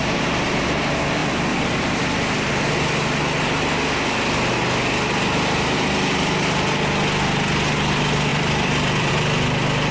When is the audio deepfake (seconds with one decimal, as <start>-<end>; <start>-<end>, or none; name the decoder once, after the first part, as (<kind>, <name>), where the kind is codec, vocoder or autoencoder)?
1.2-2.5 (vocoder, BigVGAN v2); 8.3-9.1